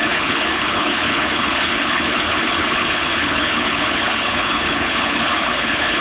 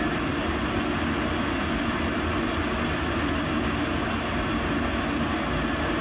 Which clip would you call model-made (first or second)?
first